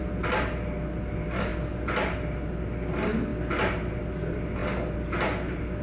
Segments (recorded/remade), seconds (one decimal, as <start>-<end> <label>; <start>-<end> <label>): 0.0-5.8 recorded